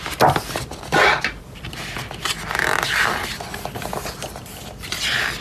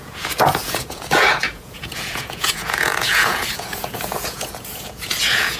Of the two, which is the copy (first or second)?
second